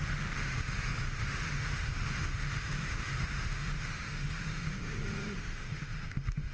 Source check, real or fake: fake